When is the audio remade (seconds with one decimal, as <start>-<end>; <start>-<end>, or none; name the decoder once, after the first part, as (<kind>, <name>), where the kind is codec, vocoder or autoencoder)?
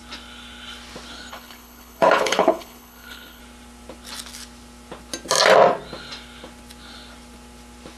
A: 1.3-3.4 (codec, HILCodec)